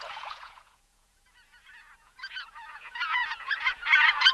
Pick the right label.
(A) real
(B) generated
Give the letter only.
B